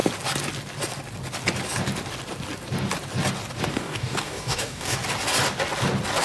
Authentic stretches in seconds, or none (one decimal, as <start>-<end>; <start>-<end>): 0.0-3.7; 5.0-6.2